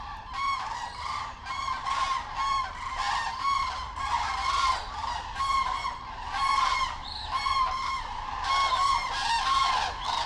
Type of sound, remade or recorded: remade